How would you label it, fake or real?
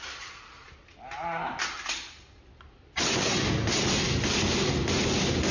real